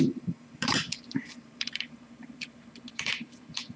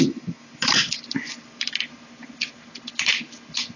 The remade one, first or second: first